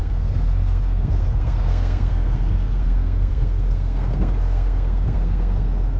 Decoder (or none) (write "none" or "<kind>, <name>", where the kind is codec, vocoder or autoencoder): codec, SNAC